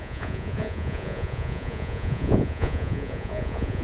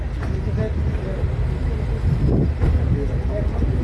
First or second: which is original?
second